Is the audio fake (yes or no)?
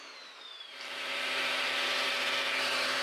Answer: yes